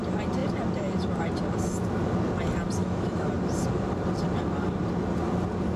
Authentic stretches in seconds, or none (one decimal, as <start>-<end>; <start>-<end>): 0.0-2.8; 3.3-5.8